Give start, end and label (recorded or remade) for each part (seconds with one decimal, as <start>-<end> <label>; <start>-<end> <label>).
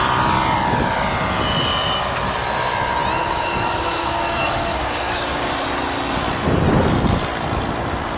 0.0-3.2 recorded; 3.2-5.5 remade; 5.5-8.2 recorded